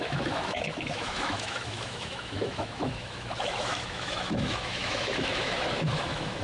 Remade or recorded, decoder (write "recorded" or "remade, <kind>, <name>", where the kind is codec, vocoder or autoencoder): remade, autoencoder, DAC-VAE